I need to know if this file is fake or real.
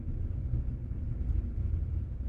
real